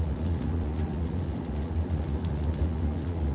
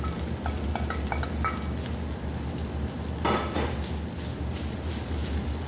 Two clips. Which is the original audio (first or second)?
second